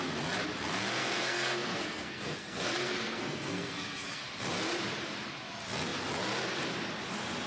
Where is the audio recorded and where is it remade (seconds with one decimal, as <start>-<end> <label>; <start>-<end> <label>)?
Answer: 0.0-1.0 recorded; 1.0-4.2 remade; 4.2-7.5 recorded